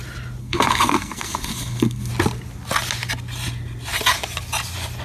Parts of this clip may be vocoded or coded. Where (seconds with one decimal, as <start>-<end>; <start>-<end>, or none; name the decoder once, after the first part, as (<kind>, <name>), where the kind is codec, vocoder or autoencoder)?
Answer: 0.4-2.1 (codec, SNAC)